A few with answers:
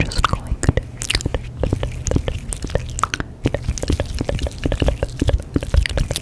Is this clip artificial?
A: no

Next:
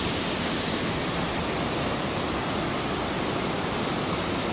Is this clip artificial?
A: no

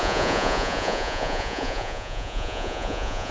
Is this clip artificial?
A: yes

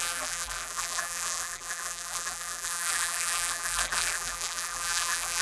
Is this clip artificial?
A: yes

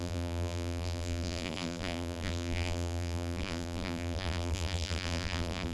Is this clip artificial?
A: yes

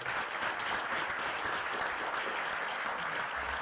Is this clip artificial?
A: no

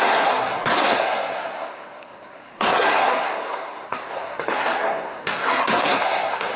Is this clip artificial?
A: yes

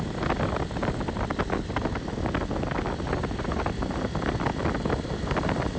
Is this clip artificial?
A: no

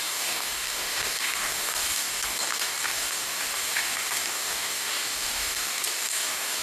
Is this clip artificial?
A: yes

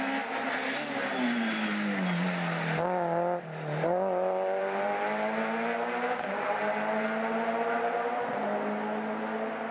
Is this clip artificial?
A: no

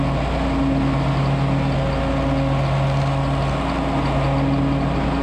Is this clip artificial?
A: no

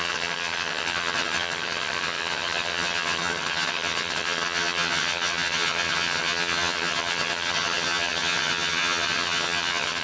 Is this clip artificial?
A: yes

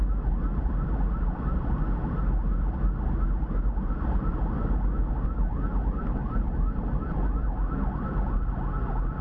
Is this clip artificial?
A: no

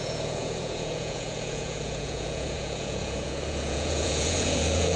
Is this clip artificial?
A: yes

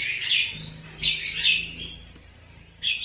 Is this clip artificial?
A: no